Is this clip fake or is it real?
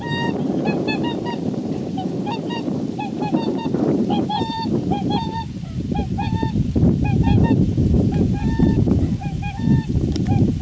fake